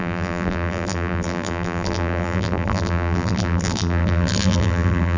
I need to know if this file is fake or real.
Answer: fake